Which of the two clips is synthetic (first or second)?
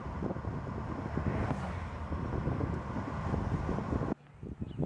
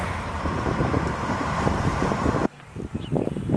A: second